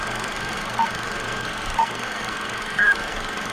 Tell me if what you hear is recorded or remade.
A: remade